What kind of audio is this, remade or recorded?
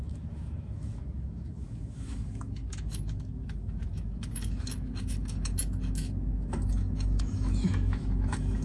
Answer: remade